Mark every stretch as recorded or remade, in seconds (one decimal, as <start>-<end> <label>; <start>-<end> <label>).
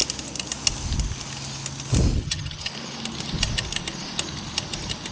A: 0.0-2.2 recorded; 2.2-2.7 remade; 2.7-5.1 recorded